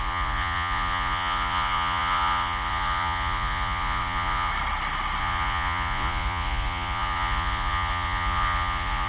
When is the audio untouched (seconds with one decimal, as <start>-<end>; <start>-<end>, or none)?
4.5-5.2